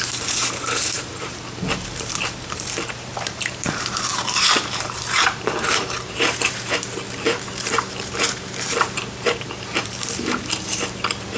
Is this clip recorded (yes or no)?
no